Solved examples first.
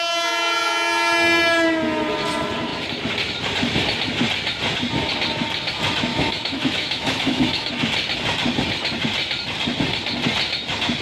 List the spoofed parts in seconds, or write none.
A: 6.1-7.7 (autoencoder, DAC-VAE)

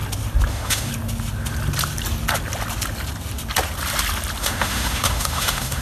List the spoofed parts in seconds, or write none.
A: 0.5-0.9 (autoencoder, DAC-VAE); 4.4-5.8

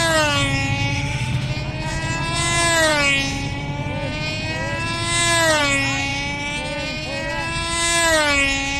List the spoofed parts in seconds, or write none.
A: 0.9-1.5 (autoencoder, DAC-VAE)

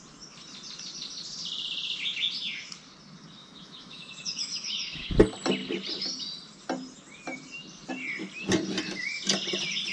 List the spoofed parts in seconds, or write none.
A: 3.4-5.1 (autoencoder, DAC-VAE)

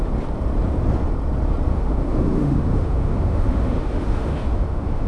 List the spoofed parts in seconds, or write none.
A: 1.7-5.1 (autoencoder, DAC-VAE)